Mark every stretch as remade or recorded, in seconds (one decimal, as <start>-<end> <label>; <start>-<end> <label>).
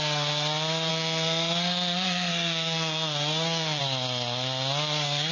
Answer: 0.0-0.9 recorded; 0.9-3.8 remade; 3.8-5.3 recorded